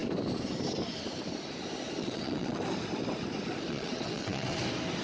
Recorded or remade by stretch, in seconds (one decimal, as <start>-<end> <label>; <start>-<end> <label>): 0.0-2.0 recorded; 2.0-2.6 remade; 2.6-3.7 recorded; 3.7-4.6 remade; 4.6-5.0 recorded